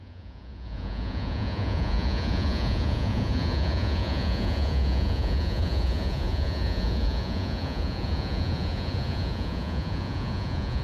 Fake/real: fake